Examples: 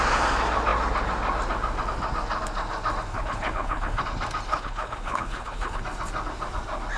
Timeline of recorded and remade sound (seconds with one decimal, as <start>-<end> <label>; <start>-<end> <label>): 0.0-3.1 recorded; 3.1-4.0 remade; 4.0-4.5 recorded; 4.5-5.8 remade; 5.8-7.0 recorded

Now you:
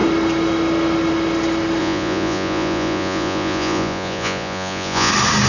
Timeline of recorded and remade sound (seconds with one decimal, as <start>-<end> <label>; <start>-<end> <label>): 0.0-1.8 recorded; 1.8-5.1 remade; 5.1-5.5 recorded

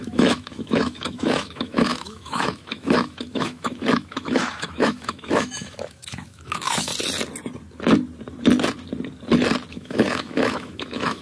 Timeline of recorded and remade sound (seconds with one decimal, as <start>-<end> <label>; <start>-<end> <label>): 0.0-6.9 remade; 6.9-9.7 recorded; 9.7-11.2 remade

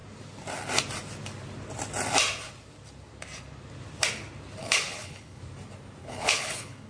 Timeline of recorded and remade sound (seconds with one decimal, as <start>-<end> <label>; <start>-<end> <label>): 0.0-4.6 recorded; 4.6-5.4 remade; 5.4-6.0 recorded; 6.0-6.9 remade

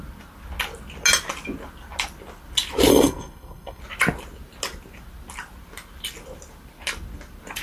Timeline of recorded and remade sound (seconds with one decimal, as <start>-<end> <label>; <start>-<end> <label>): 0.0-2.9 recorded; 2.9-3.8 remade; 3.8-7.6 recorded